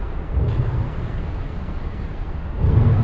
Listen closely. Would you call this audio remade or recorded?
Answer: remade